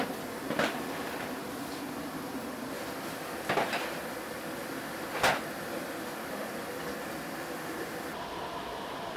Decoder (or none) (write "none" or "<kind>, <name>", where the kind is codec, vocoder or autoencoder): none